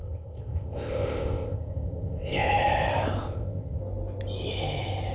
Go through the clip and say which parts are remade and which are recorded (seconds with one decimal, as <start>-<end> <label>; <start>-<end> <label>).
0.0-2.5 remade; 2.5-3.2 recorded; 3.2-3.8 remade; 3.8-5.1 recorded